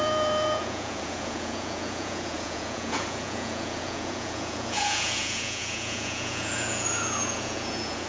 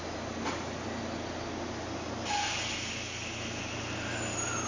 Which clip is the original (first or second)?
second